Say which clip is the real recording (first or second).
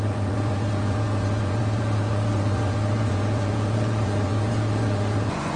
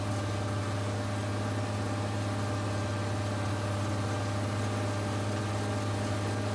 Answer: second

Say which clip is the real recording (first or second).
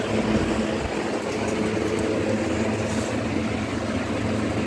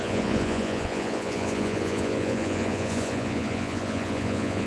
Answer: first